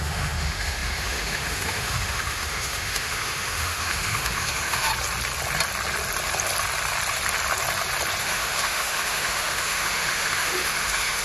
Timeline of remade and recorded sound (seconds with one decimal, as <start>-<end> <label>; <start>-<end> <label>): 0.0-4.9 remade; 4.9-8.2 recorded; 8.2-11.2 remade